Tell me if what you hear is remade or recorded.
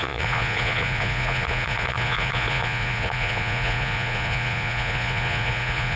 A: remade